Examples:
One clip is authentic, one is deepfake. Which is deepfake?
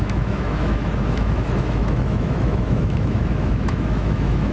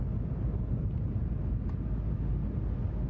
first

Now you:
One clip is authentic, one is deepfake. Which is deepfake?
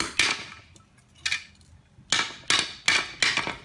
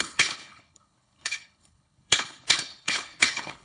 second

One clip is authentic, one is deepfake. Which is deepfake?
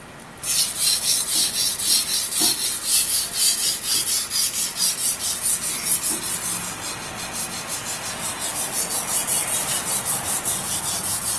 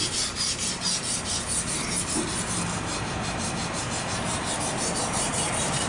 second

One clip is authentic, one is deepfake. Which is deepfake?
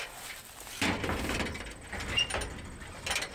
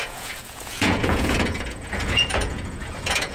second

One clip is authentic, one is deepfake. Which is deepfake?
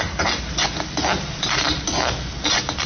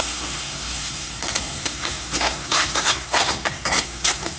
second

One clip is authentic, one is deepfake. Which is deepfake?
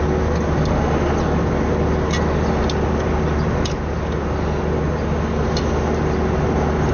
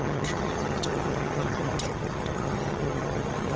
second